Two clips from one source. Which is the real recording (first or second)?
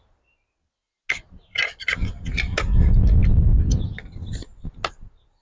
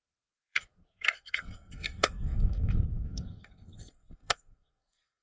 first